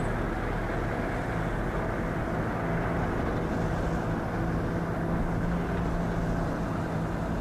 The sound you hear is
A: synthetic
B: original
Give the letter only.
B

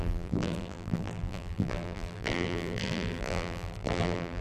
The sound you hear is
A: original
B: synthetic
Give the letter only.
B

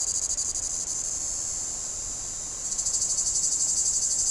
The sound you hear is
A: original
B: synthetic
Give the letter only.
B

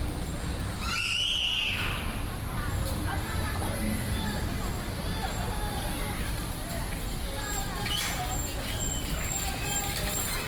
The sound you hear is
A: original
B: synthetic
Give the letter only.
A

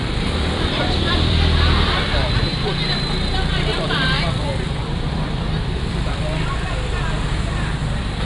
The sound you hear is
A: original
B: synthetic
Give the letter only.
B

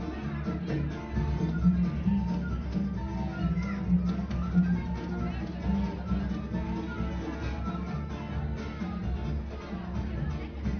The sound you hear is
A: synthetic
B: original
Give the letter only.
B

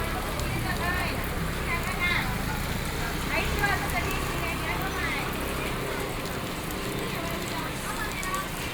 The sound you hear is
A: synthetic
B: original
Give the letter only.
B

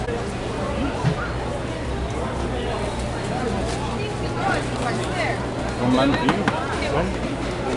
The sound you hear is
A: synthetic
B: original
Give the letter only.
B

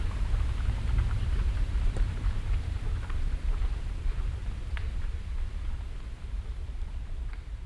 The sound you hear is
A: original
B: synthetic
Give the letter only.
B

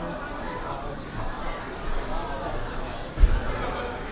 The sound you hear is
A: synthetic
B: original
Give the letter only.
B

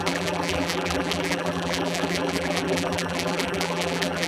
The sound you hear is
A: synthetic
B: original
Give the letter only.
A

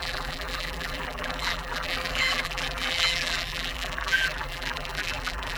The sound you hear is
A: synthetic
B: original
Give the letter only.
A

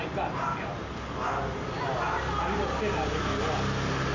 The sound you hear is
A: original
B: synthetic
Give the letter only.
A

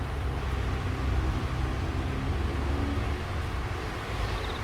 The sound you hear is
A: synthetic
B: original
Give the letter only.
B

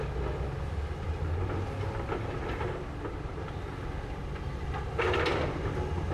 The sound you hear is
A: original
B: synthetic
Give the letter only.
A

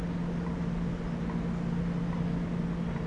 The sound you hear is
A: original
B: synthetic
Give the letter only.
A